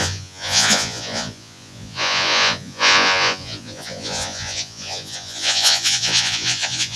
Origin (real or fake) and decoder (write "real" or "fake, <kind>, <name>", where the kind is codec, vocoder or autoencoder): fake, vocoder, Vocos